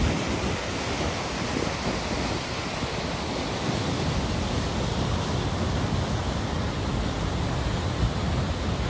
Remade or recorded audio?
recorded